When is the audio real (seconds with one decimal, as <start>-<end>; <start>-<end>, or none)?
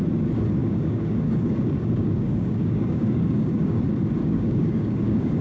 0.0-0.6; 3.8-4.2